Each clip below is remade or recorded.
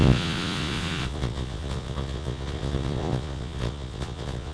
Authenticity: remade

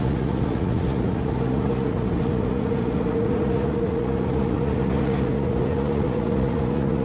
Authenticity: remade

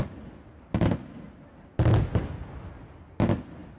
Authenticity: recorded